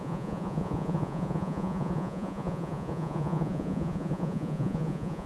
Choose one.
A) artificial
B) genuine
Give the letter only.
A